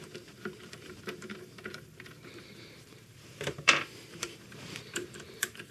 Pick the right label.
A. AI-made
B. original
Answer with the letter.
A